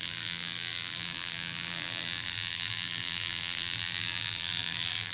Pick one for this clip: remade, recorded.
remade